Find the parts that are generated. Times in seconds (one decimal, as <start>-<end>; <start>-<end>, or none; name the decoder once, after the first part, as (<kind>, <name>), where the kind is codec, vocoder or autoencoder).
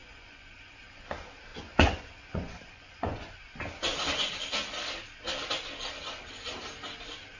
0.0-0.8 (vocoder, Vocos); 1.5-3.5